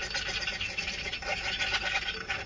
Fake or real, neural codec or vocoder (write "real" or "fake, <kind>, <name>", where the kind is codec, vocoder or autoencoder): real